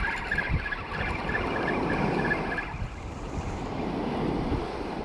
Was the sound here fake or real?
real